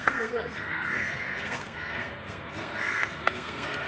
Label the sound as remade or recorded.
remade